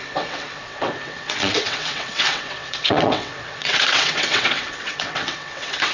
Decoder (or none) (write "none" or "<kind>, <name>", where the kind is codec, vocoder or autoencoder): vocoder, WaveNeXt